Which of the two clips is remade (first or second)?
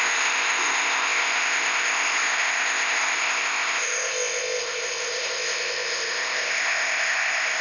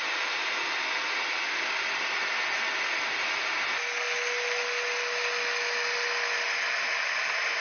first